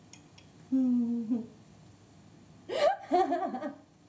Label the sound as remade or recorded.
recorded